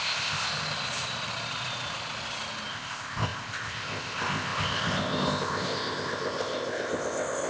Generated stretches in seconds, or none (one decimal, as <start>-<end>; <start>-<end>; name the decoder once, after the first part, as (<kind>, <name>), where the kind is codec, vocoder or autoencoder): 0.0-0.5 (codec, ZipCodec); 2.7-7.5